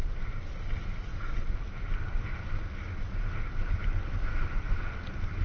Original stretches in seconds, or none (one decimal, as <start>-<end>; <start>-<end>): 0.0-5.4